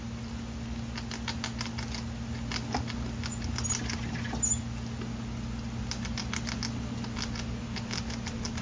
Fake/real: real